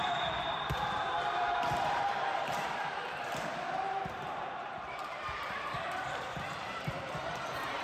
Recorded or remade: remade